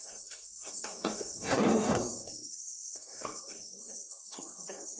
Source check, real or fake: fake